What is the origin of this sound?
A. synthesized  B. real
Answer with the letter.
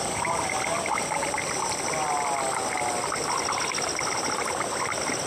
B